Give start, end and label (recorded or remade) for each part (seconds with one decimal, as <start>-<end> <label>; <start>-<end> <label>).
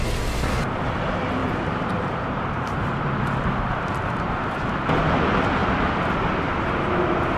0.0-1.4 recorded; 1.4-4.5 remade; 4.5-7.4 recorded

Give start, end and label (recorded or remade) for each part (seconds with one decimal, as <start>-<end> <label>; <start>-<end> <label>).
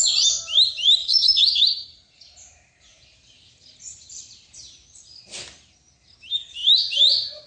0.0-1.0 recorded; 1.0-4.1 remade; 4.1-6.6 recorded; 6.6-7.5 remade